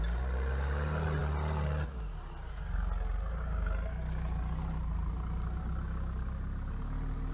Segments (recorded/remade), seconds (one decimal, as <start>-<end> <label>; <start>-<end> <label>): 0.0-7.3 recorded